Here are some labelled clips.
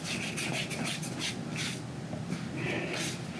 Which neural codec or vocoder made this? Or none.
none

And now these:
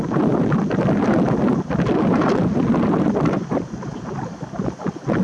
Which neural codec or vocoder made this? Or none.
none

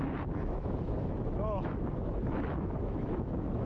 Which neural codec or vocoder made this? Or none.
autoencoder, DAC-VAE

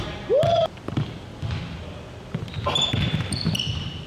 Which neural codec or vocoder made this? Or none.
none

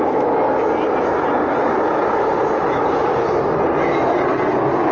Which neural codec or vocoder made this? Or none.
none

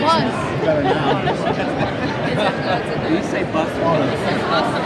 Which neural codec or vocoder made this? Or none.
none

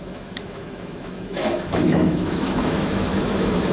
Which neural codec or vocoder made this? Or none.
autoencoder, DAC-VAE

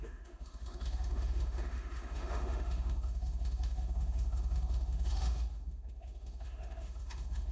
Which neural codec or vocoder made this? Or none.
autoencoder, DAC-VAE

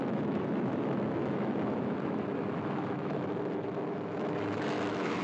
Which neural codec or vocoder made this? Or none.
autoencoder, DAC-VAE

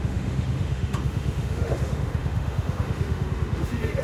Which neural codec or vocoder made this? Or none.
autoencoder, DAC-VAE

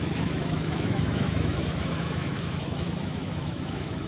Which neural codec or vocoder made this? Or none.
autoencoder, DAC-VAE